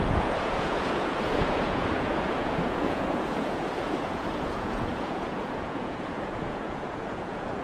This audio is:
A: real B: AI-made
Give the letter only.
B